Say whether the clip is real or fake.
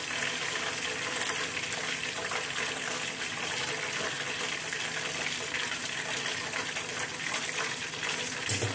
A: real